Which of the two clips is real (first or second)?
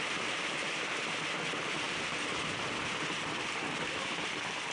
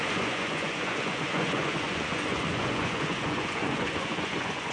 first